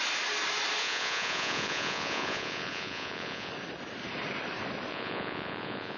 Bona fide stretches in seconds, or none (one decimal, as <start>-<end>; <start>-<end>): 0.0-0.8; 3.5-4.9